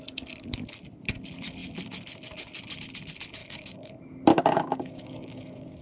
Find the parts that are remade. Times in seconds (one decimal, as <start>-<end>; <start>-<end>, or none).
3.4-3.9; 4.3-5.8